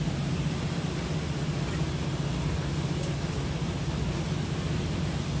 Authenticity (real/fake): real